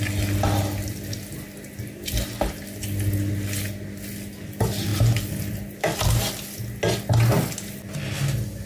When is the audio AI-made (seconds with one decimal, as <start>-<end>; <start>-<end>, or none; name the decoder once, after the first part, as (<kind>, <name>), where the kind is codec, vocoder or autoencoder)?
none